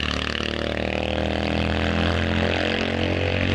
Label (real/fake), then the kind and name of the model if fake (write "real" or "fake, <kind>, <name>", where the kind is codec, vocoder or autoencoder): real